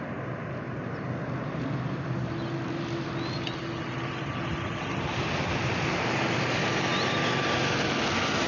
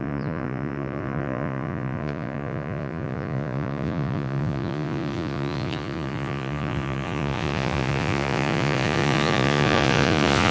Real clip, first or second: first